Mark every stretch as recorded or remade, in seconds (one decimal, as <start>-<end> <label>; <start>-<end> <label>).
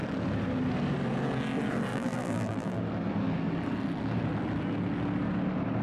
0.0-1.9 recorded; 1.9-2.8 remade; 2.8-5.8 recorded